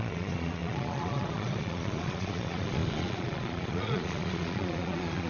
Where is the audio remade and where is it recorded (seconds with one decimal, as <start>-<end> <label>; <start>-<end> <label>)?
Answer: 0.0-5.3 remade